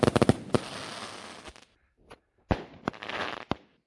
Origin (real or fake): real